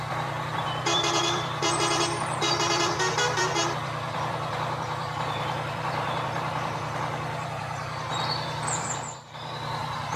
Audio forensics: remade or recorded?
remade